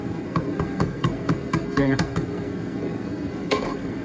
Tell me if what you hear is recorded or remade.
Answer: remade